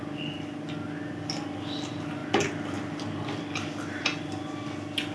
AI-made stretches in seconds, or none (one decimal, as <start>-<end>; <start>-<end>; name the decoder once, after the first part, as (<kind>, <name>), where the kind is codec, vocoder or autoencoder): none